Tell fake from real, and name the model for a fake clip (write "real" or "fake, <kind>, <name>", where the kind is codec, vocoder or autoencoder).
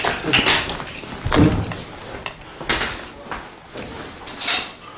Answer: real